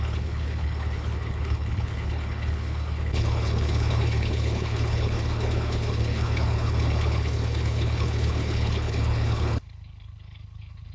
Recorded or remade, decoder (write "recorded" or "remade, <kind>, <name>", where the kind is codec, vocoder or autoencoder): remade, codec, HILCodec